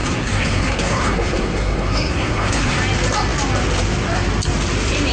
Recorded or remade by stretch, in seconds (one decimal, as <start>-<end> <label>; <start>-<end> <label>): 0.0-2.8 remade; 2.8-5.1 recorded